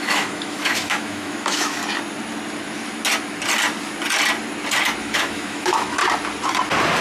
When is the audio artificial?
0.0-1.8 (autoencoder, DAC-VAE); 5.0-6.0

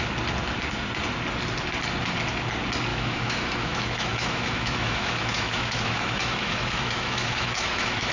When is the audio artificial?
2.9-8.1 (autoencoder, DAC-VAE)

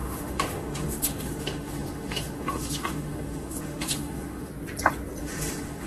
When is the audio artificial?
0.0-4.5 (autoencoder, DAC-VAE); 5.2-5.9

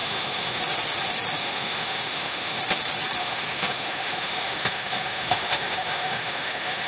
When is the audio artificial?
0.0-0.6 (autoencoder, DAC-VAE); 1.4-2.6; 3.2-6.9